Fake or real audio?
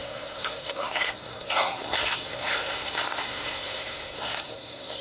fake